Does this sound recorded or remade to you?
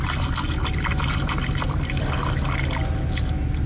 recorded